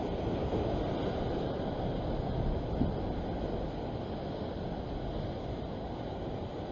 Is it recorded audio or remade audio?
recorded